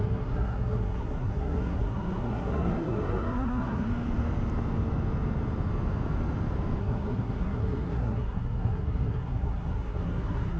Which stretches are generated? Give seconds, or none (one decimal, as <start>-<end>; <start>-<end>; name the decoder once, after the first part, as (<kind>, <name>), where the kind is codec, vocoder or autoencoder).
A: 0.0-3.9 (codec, SNAC); 6.8-10.6